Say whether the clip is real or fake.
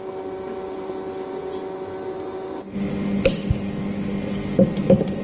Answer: real